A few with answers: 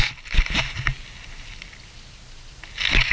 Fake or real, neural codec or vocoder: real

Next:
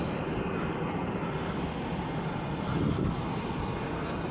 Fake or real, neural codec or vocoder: real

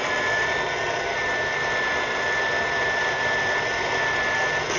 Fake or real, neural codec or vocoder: real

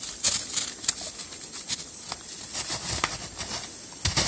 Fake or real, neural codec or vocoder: real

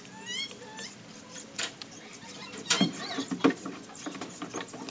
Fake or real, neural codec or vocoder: fake, vocoder, BigVGAN v2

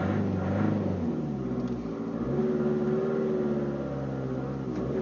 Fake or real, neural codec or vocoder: real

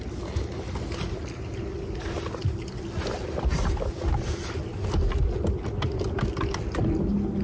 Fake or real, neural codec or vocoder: real